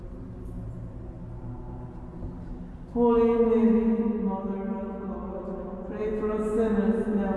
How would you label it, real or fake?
real